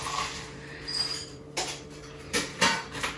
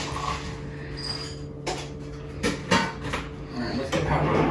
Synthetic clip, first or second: first